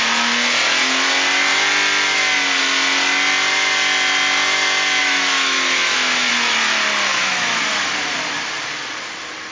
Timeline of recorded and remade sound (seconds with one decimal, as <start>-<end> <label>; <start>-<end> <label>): 0.0-5.0 recorded; 5.0-6.3 remade; 6.3-7.1 recorded; 7.1-7.6 remade; 7.6-9.5 recorded